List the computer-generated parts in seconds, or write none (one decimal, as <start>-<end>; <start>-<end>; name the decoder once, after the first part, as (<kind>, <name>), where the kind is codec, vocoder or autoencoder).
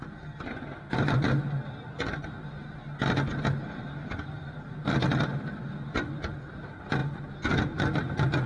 none